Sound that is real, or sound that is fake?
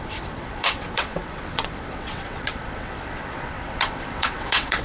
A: fake